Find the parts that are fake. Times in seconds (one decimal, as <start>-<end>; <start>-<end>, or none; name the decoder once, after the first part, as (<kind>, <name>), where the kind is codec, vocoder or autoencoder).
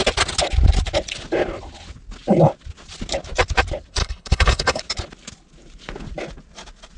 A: 4.0-4.8 (codec, HILCodec)